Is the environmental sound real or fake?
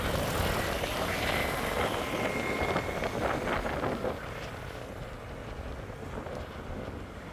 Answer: real